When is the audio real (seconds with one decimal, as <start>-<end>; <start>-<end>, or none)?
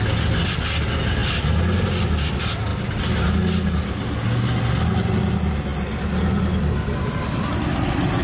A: 0.0-8.2